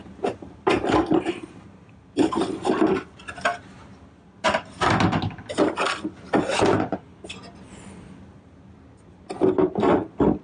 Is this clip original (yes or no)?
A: yes